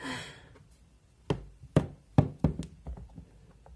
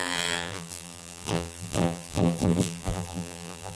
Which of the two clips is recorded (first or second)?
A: first